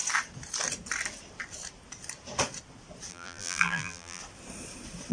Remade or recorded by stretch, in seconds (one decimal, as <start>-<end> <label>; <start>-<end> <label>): 0.0-3.1 recorded; 3.1-4.2 remade; 4.2-5.1 recorded